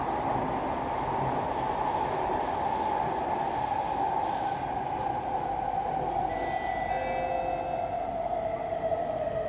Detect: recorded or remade recorded